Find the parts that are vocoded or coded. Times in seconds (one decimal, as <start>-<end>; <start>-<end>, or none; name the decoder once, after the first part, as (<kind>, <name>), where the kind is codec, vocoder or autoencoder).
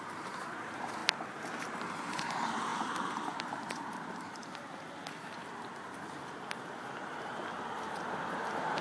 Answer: 0.0-1.0 (vocoder, BigVGAN v2); 1.6-4.4